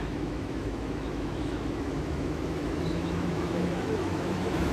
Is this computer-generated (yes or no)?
yes